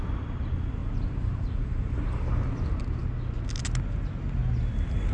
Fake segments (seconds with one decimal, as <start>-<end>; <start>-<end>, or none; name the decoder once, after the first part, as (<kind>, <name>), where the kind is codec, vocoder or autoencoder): 0.8-2.3 (vocoder, BigVGAN v2)